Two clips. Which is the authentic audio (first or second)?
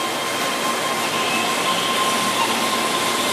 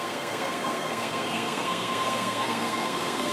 first